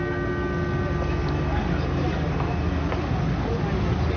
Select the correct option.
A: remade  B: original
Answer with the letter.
B